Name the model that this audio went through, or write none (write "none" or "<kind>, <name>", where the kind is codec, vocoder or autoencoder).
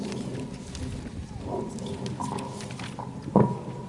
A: none